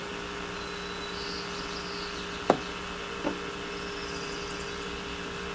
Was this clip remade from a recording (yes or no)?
no